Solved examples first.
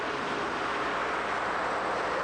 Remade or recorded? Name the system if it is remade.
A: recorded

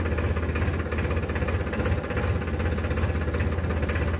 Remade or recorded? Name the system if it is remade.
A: recorded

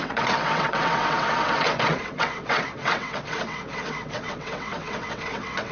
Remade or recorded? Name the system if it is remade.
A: remade, vocoder, WaveNeXt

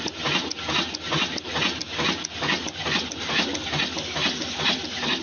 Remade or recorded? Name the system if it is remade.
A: recorded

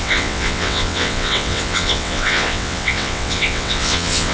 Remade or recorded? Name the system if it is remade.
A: remade, vocoder, WaveNeXt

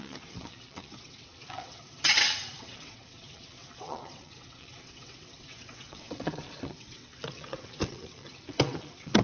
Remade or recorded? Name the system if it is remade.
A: remade, vocoder, WaveNeXt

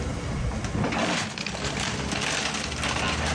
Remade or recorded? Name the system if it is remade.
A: recorded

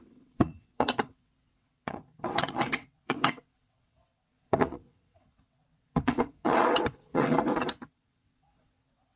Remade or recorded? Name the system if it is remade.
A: remade, vocoder, WaveNeXt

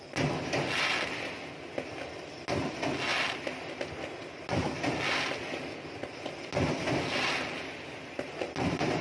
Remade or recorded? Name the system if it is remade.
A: recorded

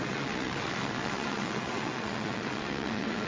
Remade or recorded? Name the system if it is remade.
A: remade, vocoder, WaveNeXt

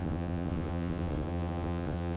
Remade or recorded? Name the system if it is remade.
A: remade, vocoder, WaveNeXt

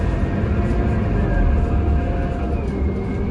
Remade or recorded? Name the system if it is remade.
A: recorded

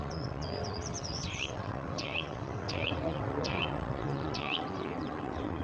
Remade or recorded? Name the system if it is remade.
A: remade, vocoder, WaveNeXt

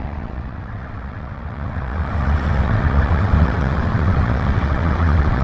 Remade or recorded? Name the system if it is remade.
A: remade, vocoder, WaveNeXt